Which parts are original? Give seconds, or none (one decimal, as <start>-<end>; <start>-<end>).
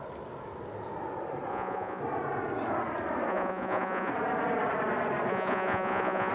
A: 0.0-1.5; 2.0-3.3; 4.1-5.3